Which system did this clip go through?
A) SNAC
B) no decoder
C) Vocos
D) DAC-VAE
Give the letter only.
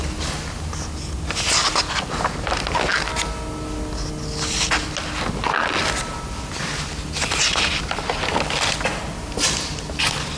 B